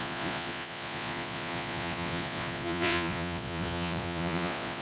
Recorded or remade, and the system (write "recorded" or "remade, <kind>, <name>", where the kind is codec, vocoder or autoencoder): remade, vocoder, Vocos